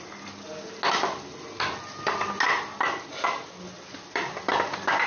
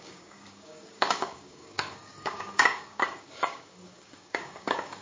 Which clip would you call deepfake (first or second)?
second